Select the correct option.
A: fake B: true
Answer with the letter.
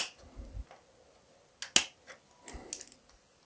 B